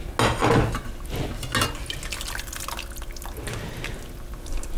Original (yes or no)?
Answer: yes